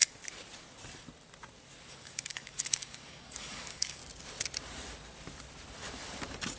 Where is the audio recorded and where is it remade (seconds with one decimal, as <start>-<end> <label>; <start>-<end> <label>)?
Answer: 0.0-1.9 recorded; 1.9-4.0 remade; 4.0-6.6 recorded